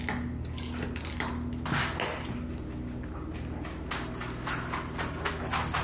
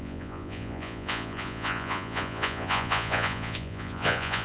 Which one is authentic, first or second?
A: first